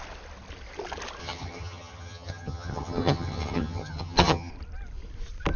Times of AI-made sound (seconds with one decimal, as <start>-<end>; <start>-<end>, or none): 1.2-4.5